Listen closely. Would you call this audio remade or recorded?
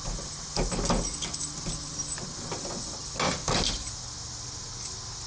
recorded